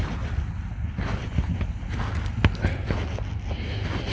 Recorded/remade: recorded